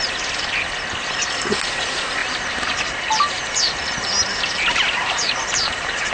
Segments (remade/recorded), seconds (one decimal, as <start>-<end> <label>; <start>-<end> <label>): 0.0-2.2 recorded; 2.2-6.1 remade